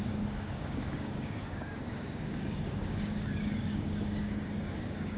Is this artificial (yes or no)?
yes